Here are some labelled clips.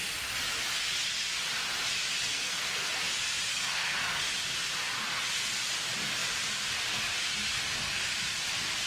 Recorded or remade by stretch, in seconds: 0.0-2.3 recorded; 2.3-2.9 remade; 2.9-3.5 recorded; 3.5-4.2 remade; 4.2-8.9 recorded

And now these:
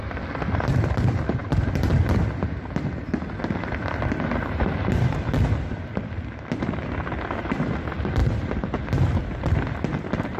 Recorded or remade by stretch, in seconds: 0.0-1.4 recorded; 1.4-2.0 remade; 2.0-10.4 recorded

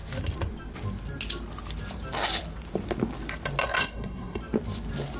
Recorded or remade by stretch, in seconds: 0.0-3.6 recorded; 3.6-4.4 remade; 4.4-5.2 recorded

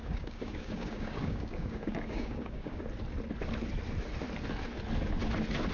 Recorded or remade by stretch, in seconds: 0.0-2.8 remade; 2.8-5.7 recorded

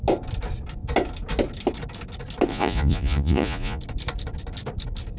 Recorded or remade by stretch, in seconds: 0.0-2.5 recorded; 2.5-3.8 remade; 3.8-5.2 recorded

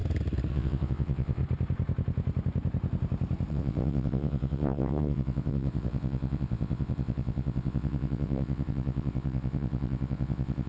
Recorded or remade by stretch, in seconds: 0.0-0.5 recorded; 0.5-1.4 remade; 1.4-3.5 recorded; 3.5-10.7 remade

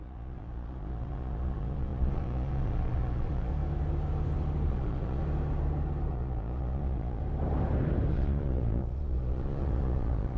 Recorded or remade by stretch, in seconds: 0.0-3.5 remade; 3.5-4.7 recorded; 4.7-5.2 remade; 5.2-6.1 recorded; 6.1-7.2 remade; 7.2-8.1 recorded; 8.1-10.4 remade